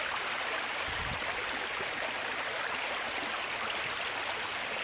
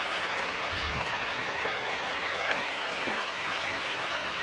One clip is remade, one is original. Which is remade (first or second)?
second